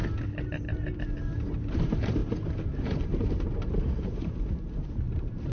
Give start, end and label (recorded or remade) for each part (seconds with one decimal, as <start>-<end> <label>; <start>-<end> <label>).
0.0-1.5 recorded; 1.5-2.2 remade; 2.2-2.8 recorded; 2.8-5.5 remade